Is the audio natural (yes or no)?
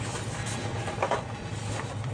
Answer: yes